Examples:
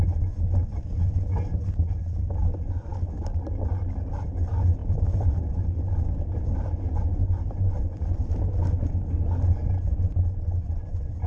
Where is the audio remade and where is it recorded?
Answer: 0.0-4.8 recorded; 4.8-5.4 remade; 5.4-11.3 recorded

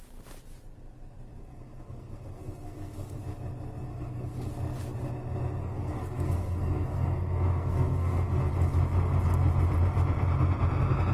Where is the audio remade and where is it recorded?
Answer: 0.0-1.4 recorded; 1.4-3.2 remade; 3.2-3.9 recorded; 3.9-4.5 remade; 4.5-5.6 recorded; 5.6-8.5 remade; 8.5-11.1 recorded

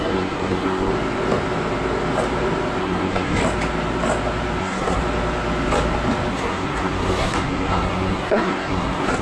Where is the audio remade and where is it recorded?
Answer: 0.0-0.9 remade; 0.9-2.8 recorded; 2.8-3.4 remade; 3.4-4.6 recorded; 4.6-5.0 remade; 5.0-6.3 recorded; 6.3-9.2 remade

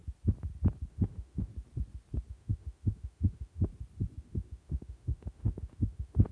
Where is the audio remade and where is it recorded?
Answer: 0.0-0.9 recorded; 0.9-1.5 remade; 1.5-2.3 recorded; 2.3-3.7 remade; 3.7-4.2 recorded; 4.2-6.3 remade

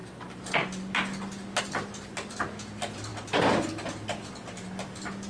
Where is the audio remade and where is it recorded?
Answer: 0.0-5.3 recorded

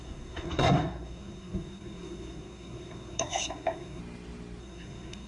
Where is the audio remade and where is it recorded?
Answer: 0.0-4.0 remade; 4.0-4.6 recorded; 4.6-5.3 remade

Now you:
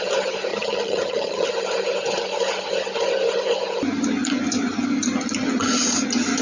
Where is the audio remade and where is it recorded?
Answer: 0.0-0.5 recorded; 0.5-1.5 remade; 1.5-6.4 recorded